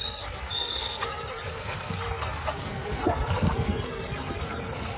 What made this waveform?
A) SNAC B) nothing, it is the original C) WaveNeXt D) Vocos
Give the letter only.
A